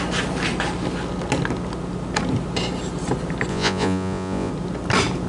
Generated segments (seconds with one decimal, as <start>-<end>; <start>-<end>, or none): 3.5-4.5